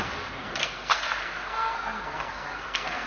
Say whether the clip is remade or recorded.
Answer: remade